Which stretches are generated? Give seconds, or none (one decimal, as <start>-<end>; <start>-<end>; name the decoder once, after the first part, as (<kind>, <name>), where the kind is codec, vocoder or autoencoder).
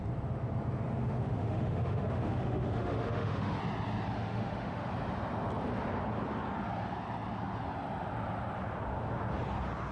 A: 1.0-3.6 (autoencoder, DAC-VAE); 4.2-4.9